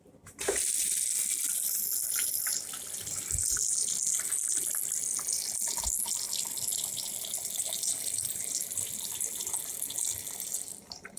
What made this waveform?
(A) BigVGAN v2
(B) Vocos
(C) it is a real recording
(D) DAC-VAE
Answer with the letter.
C